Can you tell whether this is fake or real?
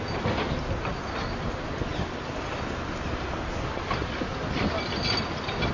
real